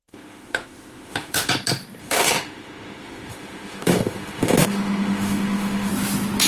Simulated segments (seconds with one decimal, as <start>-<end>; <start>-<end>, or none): 0.0-1.5; 2.0-5.9